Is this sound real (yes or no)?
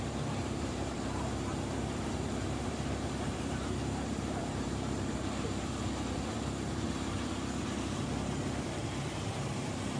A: no